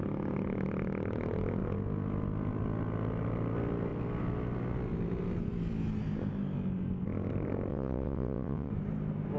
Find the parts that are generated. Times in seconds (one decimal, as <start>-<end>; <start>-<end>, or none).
7.7-8.7